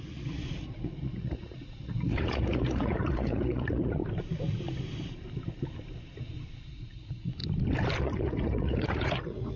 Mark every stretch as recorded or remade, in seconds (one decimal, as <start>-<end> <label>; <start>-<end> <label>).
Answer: 0.0-4.0 remade; 4.0-6.7 recorded; 6.7-7.4 remade; 7.4-8.0 recorded; 8.0-9.6 remade